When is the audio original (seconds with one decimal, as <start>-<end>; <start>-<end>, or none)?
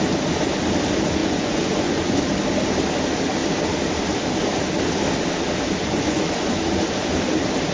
0.0-1.2; 2.2-5.8; 6.6-7.7